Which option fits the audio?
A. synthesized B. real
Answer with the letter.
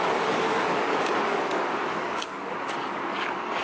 A